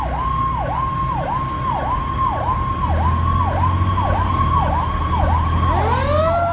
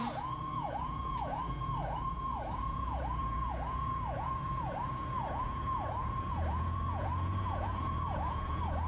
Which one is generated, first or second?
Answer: second